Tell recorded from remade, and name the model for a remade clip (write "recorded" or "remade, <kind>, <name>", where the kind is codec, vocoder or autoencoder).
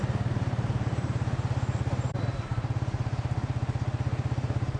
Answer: remade, vocoder, BigVGAN v2